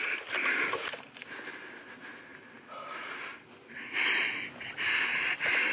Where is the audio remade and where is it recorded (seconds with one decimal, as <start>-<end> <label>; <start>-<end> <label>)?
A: 0.0-5.7 recorded